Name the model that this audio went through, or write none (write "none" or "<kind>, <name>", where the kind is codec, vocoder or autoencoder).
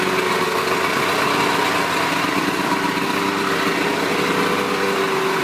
none